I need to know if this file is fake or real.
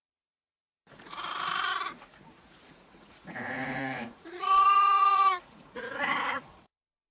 fake